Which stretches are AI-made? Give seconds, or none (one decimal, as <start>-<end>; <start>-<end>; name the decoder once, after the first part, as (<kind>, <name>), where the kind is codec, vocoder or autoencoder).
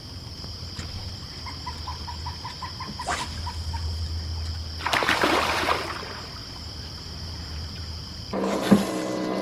6.4-9.0 (vocoder, BigVGAN v2)